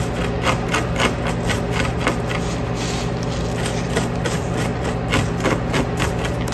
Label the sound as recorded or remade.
recorded